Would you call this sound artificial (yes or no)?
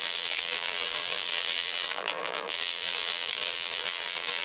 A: yes